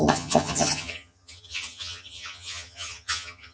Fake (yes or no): yes